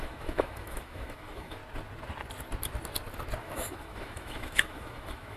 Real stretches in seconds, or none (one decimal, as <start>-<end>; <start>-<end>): 1.6-3.4

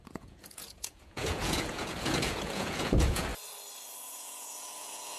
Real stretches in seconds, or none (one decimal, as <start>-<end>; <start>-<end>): 3.3-4.0